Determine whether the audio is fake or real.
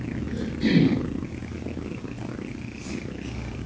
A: real